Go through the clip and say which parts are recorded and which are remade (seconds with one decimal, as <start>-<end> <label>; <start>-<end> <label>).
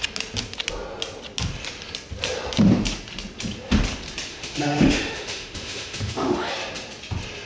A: 0.0-4.3 recorded; 4.3-6.5 remade; 6.5-7.5 recorded